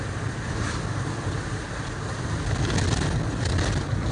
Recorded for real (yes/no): yes